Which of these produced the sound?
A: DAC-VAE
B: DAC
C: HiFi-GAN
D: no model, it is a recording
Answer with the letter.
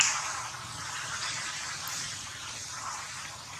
D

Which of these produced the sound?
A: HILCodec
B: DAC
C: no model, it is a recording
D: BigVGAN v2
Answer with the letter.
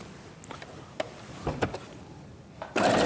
C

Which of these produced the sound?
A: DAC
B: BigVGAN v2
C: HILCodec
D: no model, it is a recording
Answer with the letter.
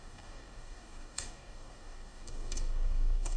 A